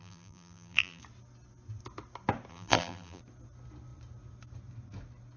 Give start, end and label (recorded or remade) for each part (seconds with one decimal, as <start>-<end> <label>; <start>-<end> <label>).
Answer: 0.0-1.0 remade; 1.0-2.5 recorded; 2.5-3.2 remade; 3.2-5.4 recorded